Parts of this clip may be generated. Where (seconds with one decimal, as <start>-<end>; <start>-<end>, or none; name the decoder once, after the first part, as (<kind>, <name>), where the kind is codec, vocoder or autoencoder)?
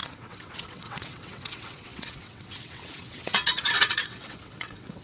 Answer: 0.0-5.0 (vocoder, WaveNeXt)